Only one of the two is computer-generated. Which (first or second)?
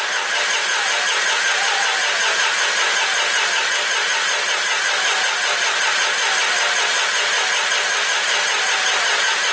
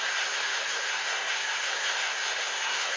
second